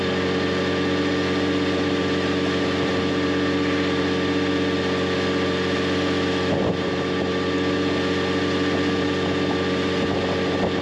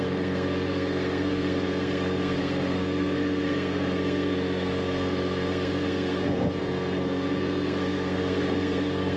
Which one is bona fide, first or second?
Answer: first